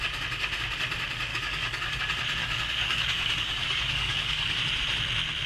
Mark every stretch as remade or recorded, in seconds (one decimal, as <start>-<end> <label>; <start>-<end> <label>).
0.0-1.3 recorded; 1.3-2.0 remade; 2.0-2.4 recorded; 2.4-4.6 remade; 4.6-5.5 recorded